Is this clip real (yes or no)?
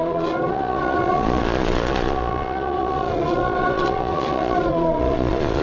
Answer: no